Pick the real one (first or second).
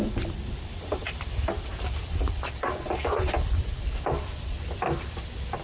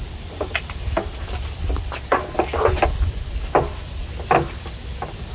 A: second